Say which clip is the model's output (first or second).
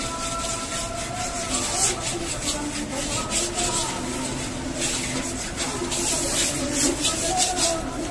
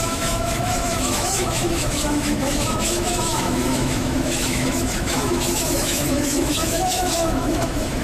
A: second